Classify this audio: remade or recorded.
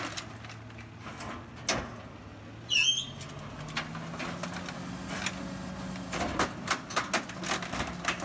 recorded